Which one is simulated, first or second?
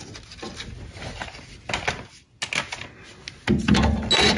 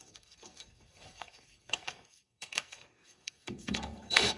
second